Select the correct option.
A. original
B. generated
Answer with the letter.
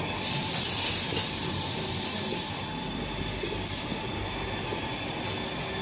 A